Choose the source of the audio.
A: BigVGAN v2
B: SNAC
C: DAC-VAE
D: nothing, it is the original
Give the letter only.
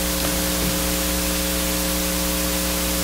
D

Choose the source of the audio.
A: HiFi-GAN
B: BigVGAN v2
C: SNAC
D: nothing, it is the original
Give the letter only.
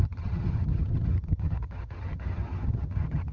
A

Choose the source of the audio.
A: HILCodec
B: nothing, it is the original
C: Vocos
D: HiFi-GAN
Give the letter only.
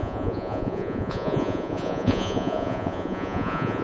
C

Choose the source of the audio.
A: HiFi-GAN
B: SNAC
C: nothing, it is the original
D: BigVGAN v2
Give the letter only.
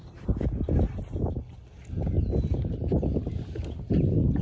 C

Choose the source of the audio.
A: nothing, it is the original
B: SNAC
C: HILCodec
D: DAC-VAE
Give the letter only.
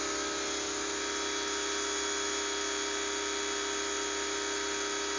A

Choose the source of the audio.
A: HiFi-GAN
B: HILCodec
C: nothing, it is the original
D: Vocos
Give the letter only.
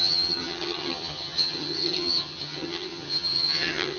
A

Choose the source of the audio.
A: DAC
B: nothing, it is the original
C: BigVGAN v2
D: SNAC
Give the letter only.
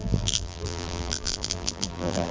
C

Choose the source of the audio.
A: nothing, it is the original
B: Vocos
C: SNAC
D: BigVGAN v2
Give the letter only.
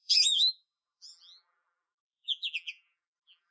D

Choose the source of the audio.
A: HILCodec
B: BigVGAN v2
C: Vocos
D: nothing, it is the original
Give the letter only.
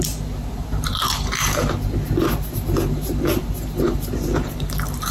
B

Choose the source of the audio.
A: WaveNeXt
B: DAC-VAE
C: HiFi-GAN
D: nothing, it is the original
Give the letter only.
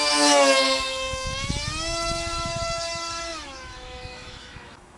B